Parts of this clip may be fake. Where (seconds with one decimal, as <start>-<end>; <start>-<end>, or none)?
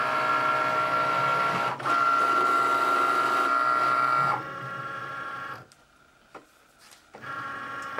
none